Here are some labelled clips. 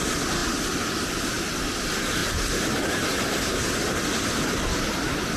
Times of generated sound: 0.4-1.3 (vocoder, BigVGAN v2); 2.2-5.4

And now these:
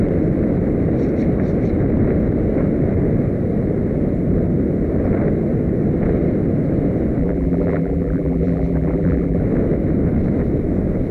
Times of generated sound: 7.2-9.4 (vocoder, BigVGAN v2)

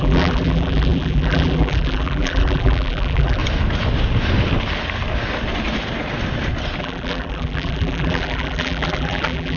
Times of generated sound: 0.0-3.4 (vocoder, BigVGAN v2); 6.8-9.6

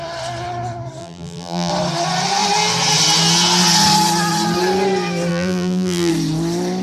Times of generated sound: 1.0-1.7 (vocoder, BigVGAN v2); 5.3-6.1

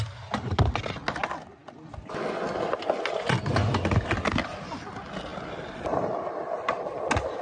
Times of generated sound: none